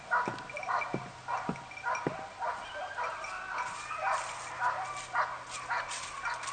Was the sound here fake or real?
real